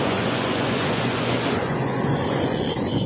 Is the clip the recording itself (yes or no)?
no